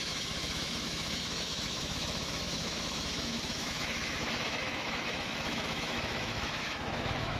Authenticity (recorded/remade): remade